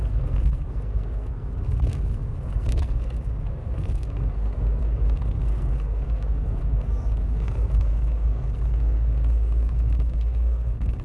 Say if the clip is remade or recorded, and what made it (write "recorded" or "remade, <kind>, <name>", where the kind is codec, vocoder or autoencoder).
remade, codec, SNAC